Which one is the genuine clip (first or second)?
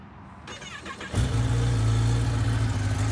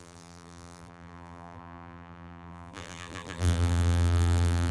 first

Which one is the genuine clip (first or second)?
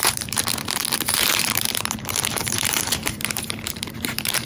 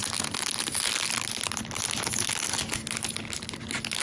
second